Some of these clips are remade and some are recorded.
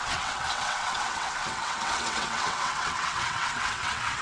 remade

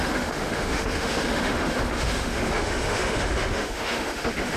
remade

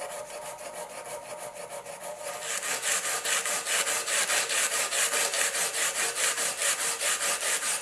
recorded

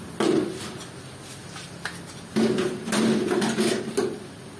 recorded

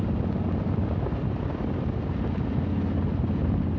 recorded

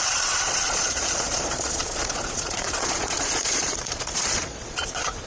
remade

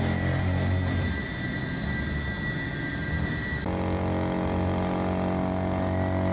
recorded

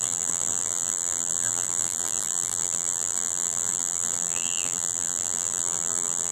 remade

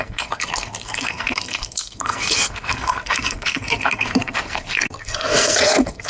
remade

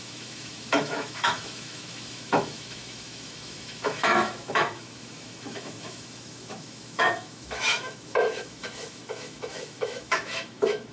remade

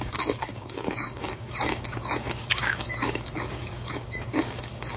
remade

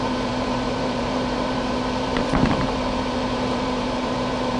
remade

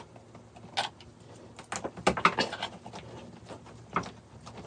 recorded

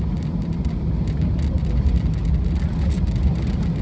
recorded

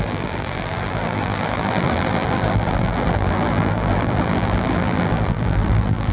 remade